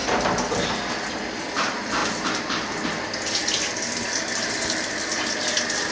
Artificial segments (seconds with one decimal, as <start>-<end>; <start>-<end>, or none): 0.0-1.1; 2.0-2.7; 3.4-4.9